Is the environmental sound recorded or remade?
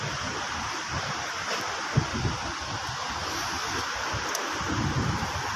recorded